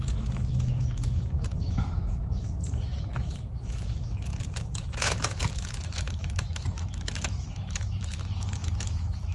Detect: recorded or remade remade